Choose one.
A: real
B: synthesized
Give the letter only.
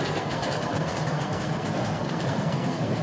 B